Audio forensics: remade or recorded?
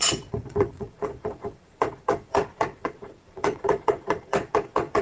remade